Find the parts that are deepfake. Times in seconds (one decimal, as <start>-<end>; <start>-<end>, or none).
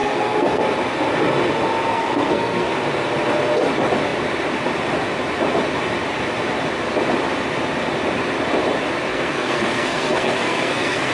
0.0-0.6; 1.9-2.7; 9.1-11.1